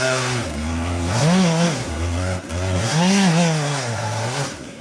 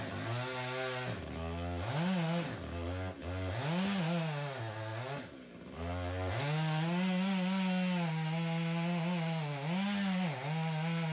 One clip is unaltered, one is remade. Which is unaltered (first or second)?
second